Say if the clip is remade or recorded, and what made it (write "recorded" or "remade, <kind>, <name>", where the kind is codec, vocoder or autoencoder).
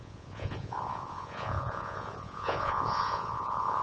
remade, vocoder, Vocos